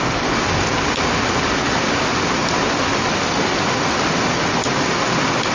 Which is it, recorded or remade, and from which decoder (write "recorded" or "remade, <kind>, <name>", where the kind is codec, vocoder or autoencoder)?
recorded